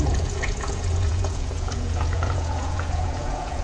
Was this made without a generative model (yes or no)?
no